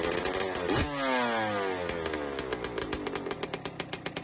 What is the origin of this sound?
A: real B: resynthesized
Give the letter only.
A